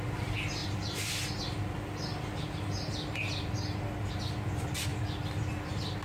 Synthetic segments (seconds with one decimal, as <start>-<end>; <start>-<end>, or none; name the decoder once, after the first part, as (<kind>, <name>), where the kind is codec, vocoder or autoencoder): none

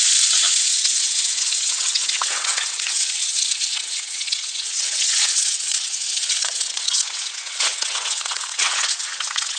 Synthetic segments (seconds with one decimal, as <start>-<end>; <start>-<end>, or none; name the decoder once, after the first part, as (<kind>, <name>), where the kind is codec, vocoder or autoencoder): 0.0-9.6 (vocoder, WaveNeXt)

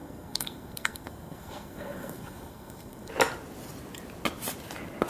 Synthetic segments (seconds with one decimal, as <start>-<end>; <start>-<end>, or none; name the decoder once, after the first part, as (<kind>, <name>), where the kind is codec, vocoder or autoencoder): 0.0-3.1 (codec, SNAC)

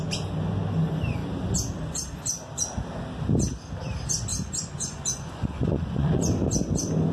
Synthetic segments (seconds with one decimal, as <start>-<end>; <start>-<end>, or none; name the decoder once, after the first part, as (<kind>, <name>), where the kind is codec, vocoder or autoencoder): 4.3-6.2 (vocoder, Vocos)

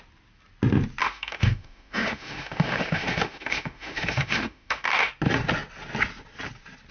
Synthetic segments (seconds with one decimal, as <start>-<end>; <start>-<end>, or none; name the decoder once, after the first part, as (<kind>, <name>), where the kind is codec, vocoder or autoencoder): 1.0-5.1 (autoencoder, DAC-VAE)

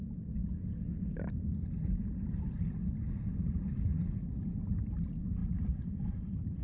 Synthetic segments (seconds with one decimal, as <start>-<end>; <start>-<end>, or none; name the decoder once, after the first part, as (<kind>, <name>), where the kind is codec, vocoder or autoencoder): none